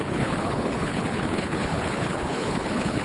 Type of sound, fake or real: fake